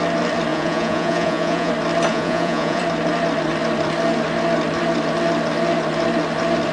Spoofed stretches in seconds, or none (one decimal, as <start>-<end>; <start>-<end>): 0.5-1.7; 2.1-2.8